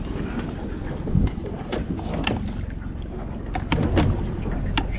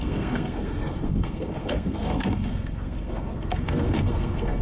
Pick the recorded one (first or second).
first